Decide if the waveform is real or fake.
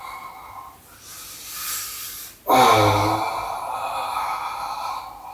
real